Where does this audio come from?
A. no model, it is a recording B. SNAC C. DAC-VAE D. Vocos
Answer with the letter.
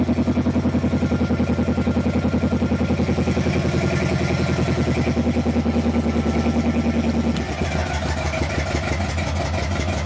A